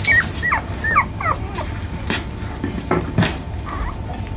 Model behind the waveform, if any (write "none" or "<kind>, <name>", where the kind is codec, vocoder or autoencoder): none